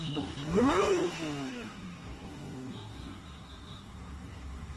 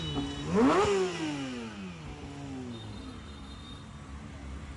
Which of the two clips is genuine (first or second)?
second